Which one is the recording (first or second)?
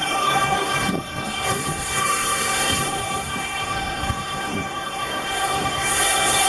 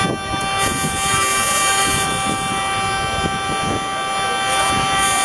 second